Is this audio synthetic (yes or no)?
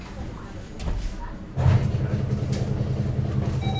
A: no